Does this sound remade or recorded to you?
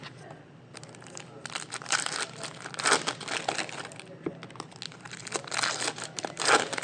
recorded